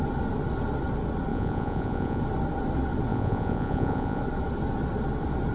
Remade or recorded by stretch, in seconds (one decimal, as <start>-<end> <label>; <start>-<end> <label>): 0.0-1.3 recorded; 1.3-2.2 remade; 2.2-3.1 recorded; 3.1-4.2 remade; 4.2-5.5 recorded